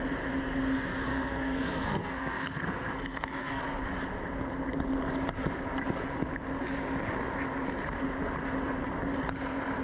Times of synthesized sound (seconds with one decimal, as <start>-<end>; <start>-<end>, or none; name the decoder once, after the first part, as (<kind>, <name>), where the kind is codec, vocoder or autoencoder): 1.1-3.6 (codec, SNAC)